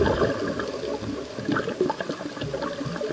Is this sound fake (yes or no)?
no